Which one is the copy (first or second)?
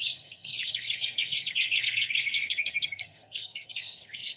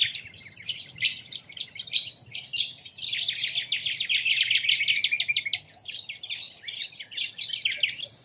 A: first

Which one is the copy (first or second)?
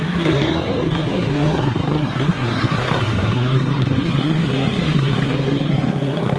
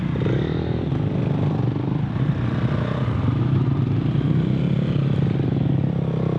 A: first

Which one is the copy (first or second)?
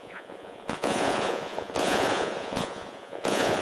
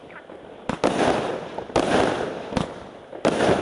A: first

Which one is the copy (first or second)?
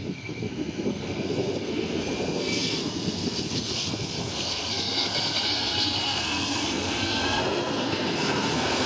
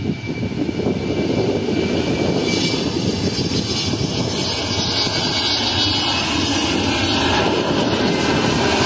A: first